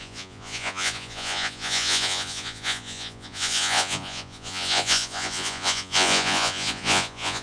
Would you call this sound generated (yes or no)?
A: yes